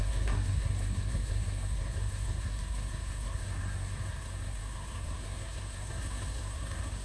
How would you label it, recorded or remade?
remade